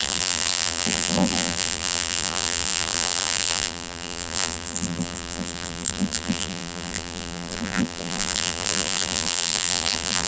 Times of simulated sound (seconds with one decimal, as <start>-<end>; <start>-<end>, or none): 0.0-10.3